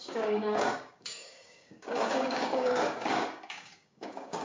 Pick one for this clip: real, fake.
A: fake